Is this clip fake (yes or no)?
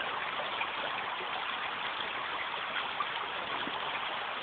no